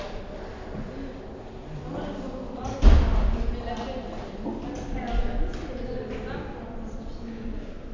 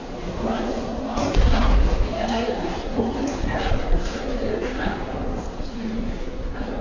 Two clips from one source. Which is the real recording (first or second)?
first